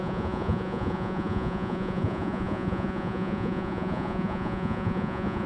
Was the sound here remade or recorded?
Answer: remade